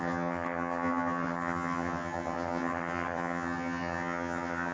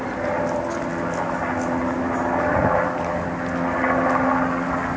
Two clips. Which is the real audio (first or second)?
second